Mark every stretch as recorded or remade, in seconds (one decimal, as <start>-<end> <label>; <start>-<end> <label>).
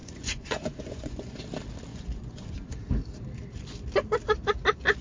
0.0-1.4 remade; 1.4-1.9 recorded; 1.9-2.8 remade; 2.8-5.0 recorded